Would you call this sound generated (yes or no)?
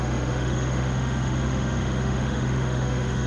yes